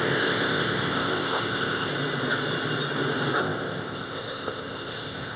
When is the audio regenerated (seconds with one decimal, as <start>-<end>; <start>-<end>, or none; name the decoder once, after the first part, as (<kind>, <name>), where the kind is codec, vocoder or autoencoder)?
0.0-1.9 (codec, ZipCodec); 3.4-5.4

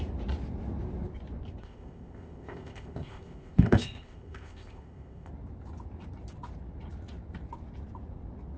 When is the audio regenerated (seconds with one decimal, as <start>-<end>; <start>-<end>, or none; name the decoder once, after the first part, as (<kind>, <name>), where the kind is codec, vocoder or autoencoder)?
1.6-5.3 (codec, ZipCodec)

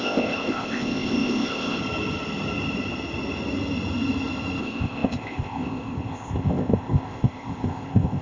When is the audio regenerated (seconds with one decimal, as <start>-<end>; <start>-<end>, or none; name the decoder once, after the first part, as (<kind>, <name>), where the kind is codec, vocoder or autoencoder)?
0.0-1.8 (codec, ZipCodec); 4.6-8.2

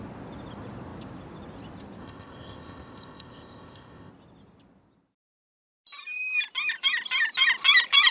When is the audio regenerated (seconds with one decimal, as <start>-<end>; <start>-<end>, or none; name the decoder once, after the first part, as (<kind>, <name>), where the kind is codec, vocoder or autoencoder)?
2.0-4.1 (codec, ZipCodec)